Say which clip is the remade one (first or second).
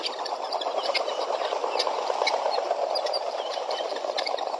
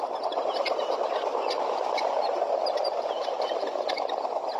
first